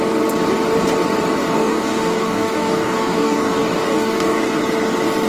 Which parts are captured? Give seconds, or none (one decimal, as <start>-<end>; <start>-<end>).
0.0-1.4; 4.6-5.3